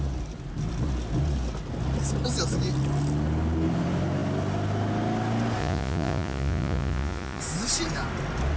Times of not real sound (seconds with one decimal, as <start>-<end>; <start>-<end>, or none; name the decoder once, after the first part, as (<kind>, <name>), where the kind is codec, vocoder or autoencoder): 5.6-7.4 (vocoder, Vocos)